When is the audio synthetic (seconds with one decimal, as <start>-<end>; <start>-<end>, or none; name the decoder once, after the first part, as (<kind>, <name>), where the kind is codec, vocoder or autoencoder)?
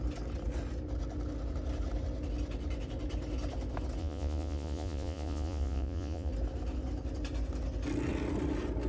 4.0-6.3 (vocoder, Vocos)